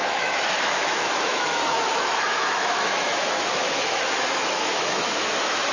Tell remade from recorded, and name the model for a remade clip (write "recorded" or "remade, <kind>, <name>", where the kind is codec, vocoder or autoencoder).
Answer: remade, autoencoder, DAC-VAE